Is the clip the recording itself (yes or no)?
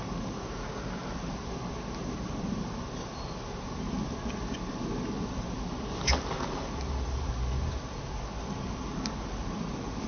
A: yes